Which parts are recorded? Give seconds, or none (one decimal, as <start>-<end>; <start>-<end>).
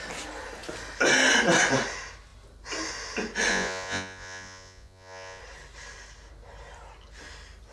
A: 0.0-3.5; 5.4-7.7